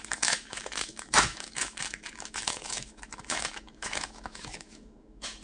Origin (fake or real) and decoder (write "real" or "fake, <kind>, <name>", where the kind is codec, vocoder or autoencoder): fake, autoencoder, DAC-VAE